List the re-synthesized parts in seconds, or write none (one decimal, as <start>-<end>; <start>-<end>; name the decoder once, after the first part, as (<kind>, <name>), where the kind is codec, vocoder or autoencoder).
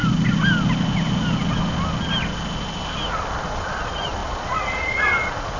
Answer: 3.4-5.6 (vocoder, Vocos)